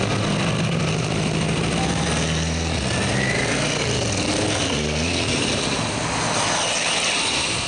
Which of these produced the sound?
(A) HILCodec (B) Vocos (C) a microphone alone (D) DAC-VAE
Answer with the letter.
C